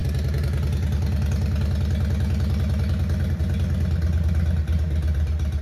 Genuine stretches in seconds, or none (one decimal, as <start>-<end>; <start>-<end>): 0.0-5.6

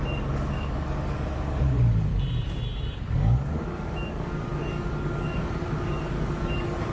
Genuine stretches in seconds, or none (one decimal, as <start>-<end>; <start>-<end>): 2.1-3.0

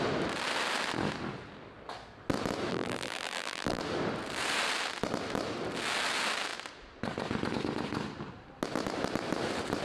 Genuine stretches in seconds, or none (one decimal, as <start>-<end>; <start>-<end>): 0.0-2.7; 3.8-9.8

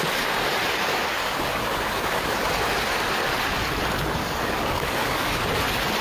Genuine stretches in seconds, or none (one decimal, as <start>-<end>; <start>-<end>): 0.0-0.9; 2.5-4.2; 5.4-6.0

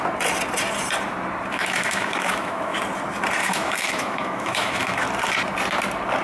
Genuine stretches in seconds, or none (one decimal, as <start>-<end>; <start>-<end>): 0.0-1.5; 2.8-3.4; 5.0-6.2

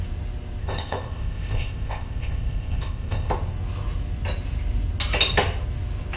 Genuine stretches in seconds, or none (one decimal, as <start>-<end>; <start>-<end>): 0.0-0.6; 3.3-6.2

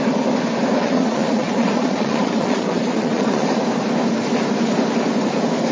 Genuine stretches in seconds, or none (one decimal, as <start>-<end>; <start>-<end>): 0.0-0.8; 3.5-5.7

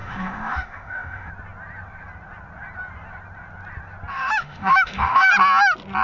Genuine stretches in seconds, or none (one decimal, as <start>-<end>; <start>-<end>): 1.3-4.1; 5.3-6.0